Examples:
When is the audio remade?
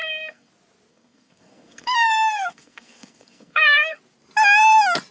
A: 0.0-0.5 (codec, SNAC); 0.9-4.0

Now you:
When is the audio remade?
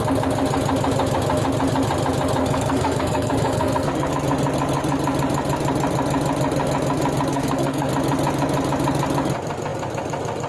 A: 2.4-4.1 (codec, SNAC); 7.3-7.9